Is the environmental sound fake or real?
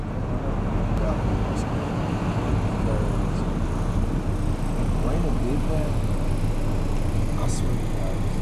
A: real